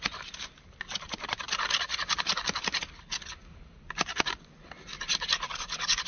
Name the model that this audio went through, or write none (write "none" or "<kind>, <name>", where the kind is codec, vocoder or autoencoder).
none